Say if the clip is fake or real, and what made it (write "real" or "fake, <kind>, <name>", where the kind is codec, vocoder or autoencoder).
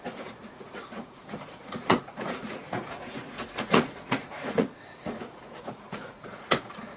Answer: fake, vocoder, Vocos